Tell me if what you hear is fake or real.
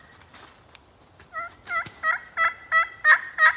real